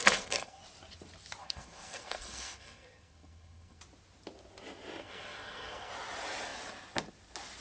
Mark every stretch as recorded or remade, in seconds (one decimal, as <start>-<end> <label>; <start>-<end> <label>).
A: 0.0-0.6 remade; 0.6-1.4 recorded; 1.4-3.8 remade; 3.8-5.0 recorded; 5.0-5.9 remade; 5.9-7.6 recorded

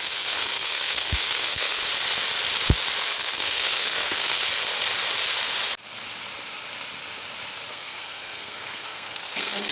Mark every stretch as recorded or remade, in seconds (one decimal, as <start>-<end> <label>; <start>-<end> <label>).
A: 0.0-1.8 remade; 1.8-3.0 recorded; 3.0-4.4 remade; 4.4-7.7 recorded; 7.7-9.7 remade